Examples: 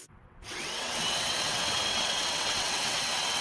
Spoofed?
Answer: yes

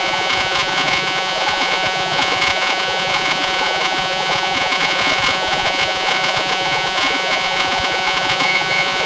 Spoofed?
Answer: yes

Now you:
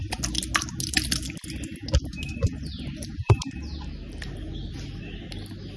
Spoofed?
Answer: no